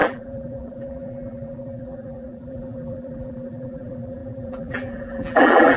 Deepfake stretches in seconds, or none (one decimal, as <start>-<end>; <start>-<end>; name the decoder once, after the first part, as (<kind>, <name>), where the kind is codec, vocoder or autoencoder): 0.0-5.8 (vocoder, BigVGAN v2)